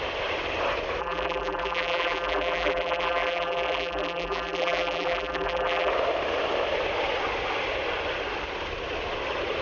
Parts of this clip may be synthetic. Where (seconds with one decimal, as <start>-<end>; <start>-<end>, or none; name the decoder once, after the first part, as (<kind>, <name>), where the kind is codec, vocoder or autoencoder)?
1.0-5.9 (vocoder, BigVGAN v2)